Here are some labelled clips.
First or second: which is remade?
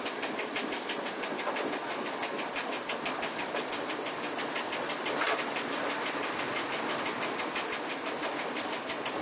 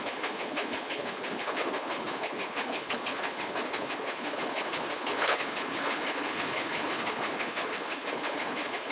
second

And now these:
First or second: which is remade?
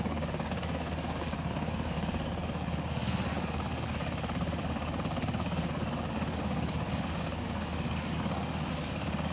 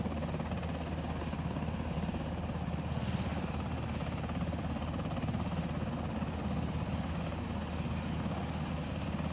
first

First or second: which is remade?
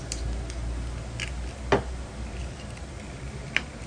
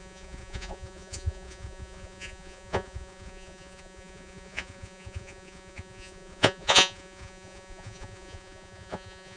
second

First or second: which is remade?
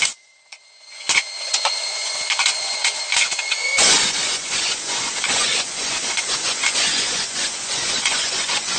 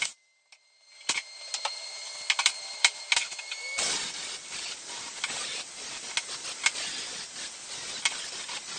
first